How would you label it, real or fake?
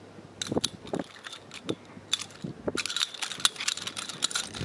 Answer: real